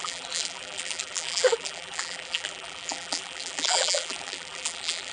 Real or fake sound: fake